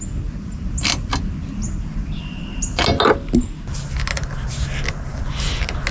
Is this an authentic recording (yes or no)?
yes